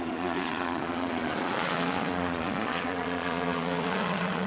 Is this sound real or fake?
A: fake